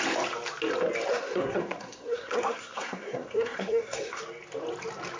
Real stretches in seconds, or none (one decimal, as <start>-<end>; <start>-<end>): 0.0-1.1; 4.2-5.2